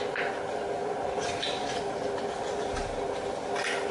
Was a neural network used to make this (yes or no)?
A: no